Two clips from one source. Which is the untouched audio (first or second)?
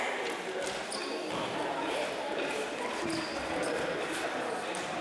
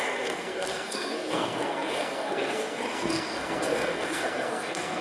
first